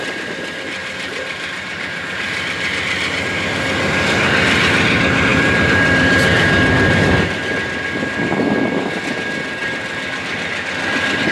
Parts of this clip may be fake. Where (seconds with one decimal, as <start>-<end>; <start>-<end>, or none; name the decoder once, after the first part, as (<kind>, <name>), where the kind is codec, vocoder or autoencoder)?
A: 0.8-3.2 (vocoder, BigVGAN v2); 5.3-7.4